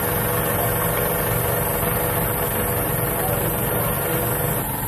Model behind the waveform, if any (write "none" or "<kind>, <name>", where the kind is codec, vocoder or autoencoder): none